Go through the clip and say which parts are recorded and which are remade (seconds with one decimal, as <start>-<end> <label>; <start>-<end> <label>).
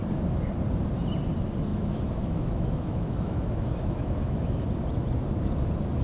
0.0-1.7 recorded; 1.7-4.6 remade; 4.6-6.0 recorded